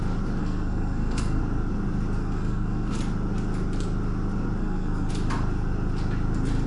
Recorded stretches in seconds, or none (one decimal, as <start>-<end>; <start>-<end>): 0.0-0.4; 1.4-2.2; 3.0-4.6; 5.1-6.7